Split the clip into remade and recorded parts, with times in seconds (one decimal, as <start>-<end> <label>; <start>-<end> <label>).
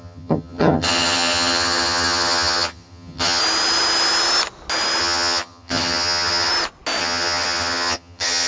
0.0-3.4 remade; 3.4-5.0 recorded; 5.0-6.5 remade; 6.5-7.0 recorded; 7.0-8.5 remade